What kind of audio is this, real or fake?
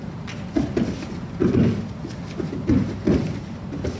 real